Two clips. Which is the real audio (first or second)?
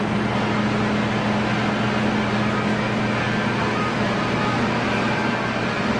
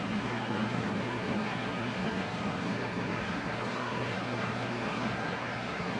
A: first